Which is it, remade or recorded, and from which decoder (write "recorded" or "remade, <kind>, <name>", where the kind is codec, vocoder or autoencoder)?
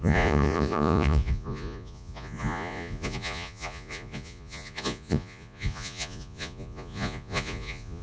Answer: remade, vocoder, Vocos